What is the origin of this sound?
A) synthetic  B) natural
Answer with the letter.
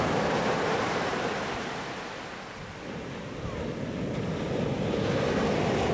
B